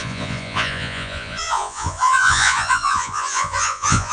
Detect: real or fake fake